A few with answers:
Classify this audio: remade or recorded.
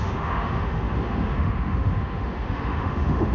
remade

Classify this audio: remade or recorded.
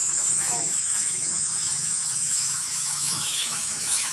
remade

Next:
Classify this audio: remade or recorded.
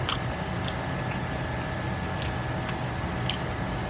recorded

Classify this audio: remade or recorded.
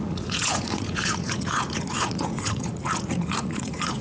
remade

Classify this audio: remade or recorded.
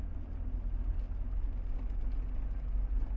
recorded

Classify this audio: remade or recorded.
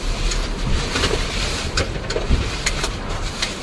recorded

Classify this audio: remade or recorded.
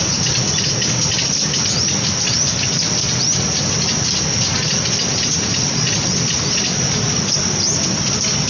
recorded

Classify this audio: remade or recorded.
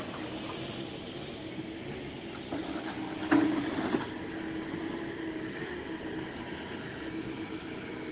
recorded